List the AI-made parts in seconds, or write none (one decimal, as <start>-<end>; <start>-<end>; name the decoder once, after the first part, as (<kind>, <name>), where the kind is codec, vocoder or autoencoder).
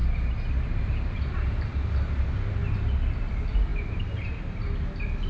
none